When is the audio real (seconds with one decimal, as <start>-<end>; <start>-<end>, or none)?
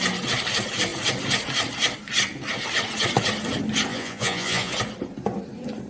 0.0-3.9; 4.7-5.9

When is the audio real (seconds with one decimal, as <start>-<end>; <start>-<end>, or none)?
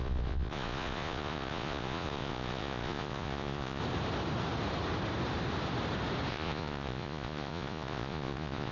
3.8-6.3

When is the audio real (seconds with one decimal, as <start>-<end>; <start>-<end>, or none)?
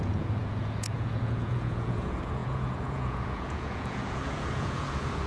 none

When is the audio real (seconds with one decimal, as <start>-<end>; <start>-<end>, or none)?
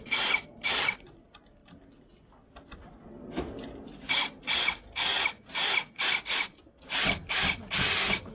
0.0-8.3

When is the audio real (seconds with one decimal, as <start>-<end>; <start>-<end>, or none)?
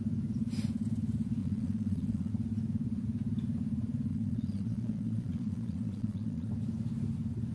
0.0-1.4; 2.3-4.1; 6.5-7.5